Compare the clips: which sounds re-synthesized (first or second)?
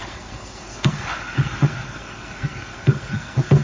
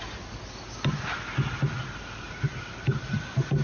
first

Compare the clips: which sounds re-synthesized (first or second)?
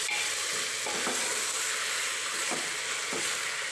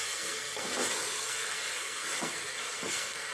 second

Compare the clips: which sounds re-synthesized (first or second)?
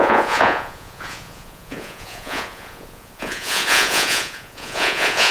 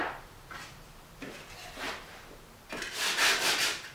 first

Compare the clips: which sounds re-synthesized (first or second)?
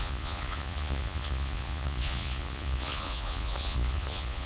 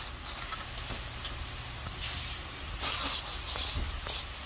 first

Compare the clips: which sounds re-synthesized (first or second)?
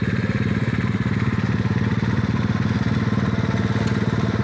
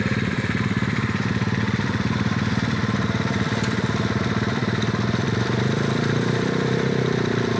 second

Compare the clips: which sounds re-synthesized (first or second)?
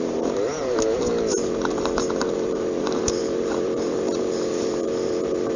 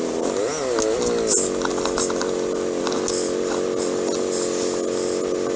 first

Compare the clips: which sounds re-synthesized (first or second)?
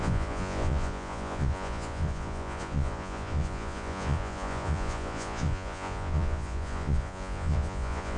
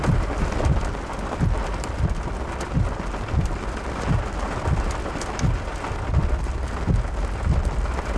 first